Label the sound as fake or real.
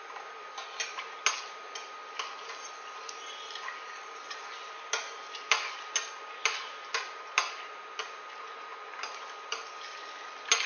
real